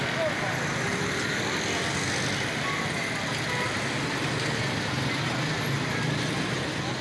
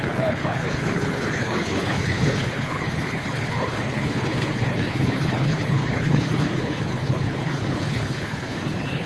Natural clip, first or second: first